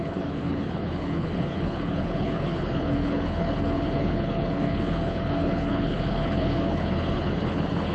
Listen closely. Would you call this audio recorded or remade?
remade